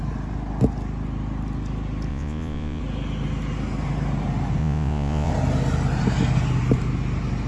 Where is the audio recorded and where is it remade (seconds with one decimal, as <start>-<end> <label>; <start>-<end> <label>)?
0.0-2.1 recorded; 2.1-2.8 remade; 2.8-4.6 recorded; 4.6-5.3 remade; 5.3-7.5 recorded